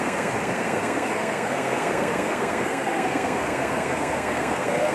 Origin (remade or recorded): remade